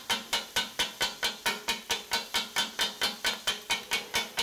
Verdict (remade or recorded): recorded